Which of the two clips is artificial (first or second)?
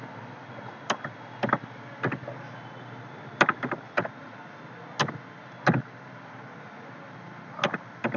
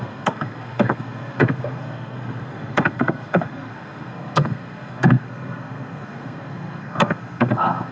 second